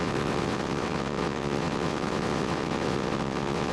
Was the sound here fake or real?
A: fake